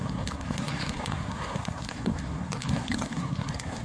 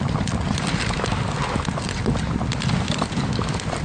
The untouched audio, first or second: second